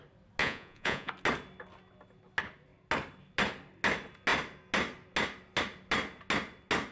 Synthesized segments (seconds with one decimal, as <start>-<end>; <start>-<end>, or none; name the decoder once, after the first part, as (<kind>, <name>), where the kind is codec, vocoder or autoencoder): 0.4-1.1 (vocoder, Vocos)